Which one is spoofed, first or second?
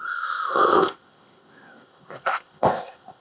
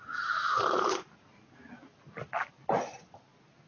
first